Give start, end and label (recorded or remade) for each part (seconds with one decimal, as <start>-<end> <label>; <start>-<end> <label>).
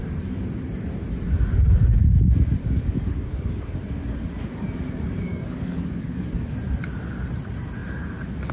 0.0-2.6 recorded; 2.6-3.6 remade; 3.6-5.3 recorded; 5.3-6.3 remade; 6.3-8.5 recorded